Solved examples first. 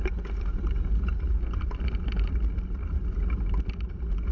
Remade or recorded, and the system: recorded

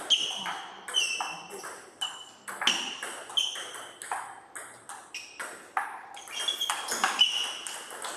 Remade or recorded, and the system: recorded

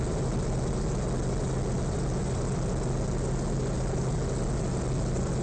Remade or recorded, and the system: recorded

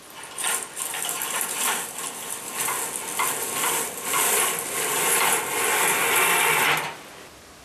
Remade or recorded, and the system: recorded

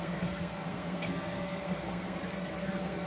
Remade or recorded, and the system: remade, codec, SNAC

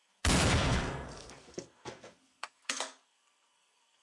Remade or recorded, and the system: remade, codec, SNAC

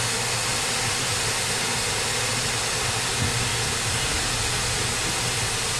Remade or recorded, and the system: recorded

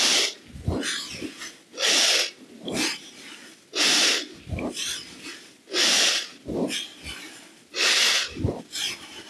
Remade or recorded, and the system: recorded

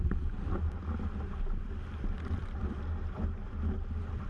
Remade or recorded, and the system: recorded